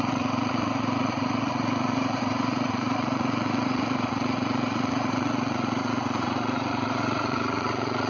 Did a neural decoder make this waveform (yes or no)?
yes